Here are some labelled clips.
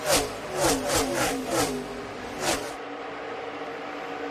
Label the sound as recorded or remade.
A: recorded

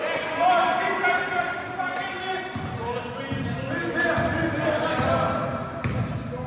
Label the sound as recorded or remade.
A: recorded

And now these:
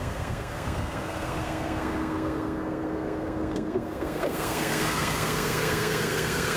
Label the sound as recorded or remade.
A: remade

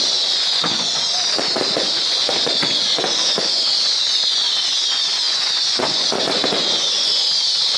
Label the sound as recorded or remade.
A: remade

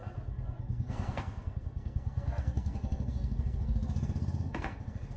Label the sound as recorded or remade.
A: remade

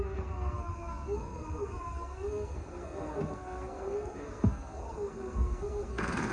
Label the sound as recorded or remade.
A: remade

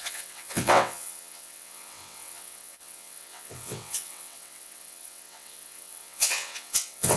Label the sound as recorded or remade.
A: remade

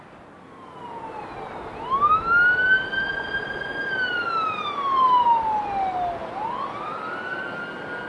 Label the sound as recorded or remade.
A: recorded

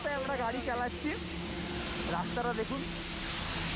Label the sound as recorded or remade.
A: recorded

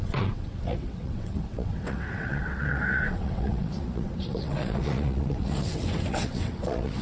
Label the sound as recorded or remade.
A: remade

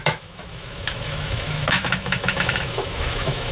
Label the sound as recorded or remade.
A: remade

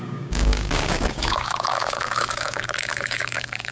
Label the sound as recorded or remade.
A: remade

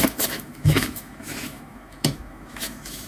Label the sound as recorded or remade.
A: remade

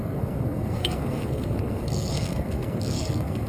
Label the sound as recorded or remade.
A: remade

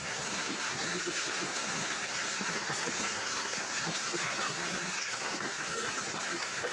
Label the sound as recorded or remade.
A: remade